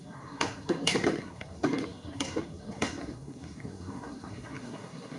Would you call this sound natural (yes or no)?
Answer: no